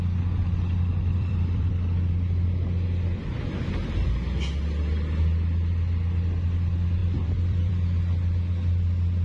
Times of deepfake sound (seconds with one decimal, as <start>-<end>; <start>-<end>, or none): 0.9-1.7; 7.0-7.7